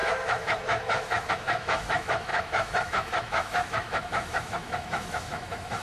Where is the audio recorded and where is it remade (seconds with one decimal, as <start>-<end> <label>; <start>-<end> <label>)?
0.0-5.8 remade